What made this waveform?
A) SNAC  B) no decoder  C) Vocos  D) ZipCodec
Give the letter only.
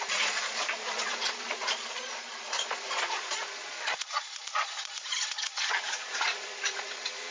C